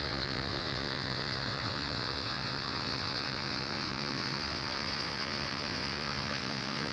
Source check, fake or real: fake